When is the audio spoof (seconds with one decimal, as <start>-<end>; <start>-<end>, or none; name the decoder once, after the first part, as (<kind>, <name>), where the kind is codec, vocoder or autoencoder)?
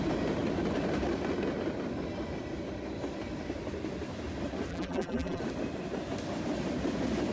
4.7-5.4 (vocoder, BigVGAN v2)